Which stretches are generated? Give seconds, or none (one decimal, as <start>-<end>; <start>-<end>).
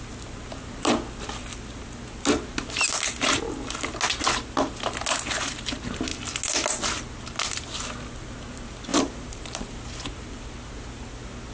8.9-9.6